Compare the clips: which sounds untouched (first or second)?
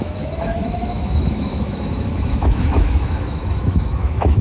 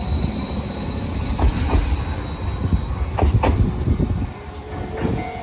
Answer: second